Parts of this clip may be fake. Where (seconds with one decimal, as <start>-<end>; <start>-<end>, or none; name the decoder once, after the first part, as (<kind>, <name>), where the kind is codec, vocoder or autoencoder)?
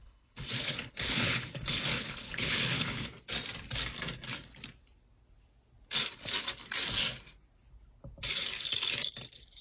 0.0-3.1 (codec, HILCodec)